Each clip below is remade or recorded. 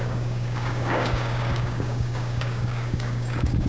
remade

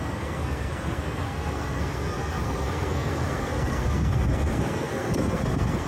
remade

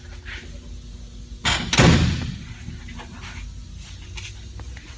recorded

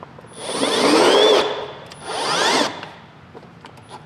recorded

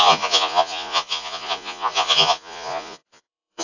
remade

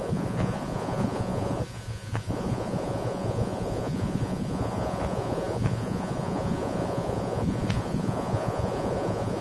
remade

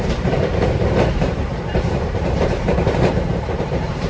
remade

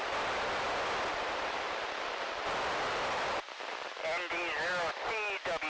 recorded